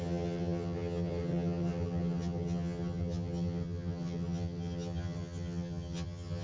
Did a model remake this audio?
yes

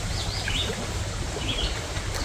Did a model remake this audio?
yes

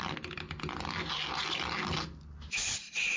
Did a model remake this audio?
no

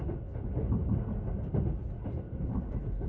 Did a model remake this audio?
no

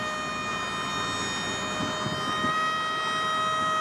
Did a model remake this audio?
no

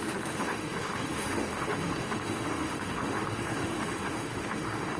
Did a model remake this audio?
yes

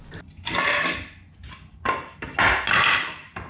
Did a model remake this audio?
no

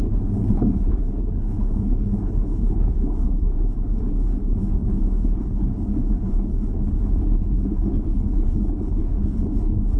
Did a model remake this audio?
yes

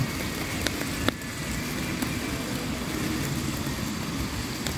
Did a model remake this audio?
no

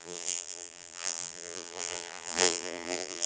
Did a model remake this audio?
yes